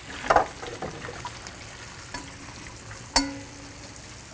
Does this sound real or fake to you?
real